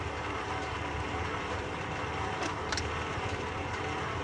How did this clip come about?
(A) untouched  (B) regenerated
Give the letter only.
B